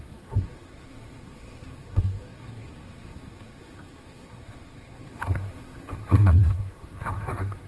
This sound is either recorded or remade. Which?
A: remade